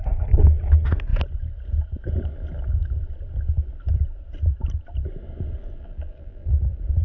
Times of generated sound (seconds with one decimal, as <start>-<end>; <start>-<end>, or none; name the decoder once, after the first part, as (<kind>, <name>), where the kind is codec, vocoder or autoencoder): 5.6-6.5 (vocoder, BigVGAN v2)